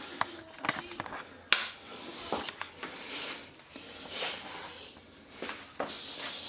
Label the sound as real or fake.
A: real